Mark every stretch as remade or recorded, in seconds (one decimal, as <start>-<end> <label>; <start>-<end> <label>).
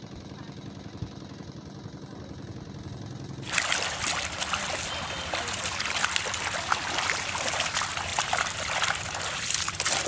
0.0-10.1 recorded